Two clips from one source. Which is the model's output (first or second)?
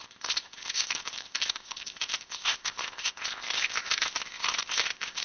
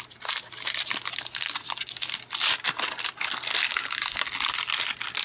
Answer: first